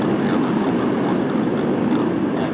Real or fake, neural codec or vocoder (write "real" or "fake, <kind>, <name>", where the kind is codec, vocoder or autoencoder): real